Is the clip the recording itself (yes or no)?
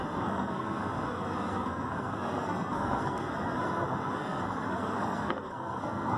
no